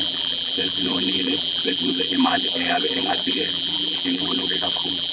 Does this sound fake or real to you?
fake